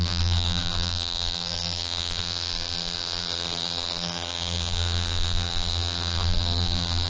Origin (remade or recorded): remade